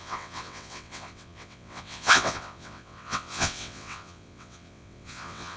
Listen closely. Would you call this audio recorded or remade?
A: remade